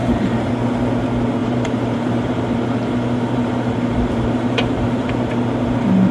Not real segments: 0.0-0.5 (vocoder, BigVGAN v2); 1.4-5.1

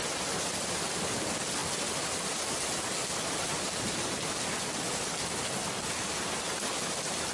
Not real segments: none

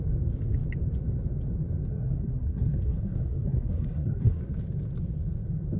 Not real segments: 1.9-4.4 (codec, SNAC)